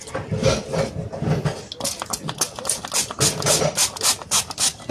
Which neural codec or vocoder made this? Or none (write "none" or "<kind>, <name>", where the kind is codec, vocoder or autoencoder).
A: none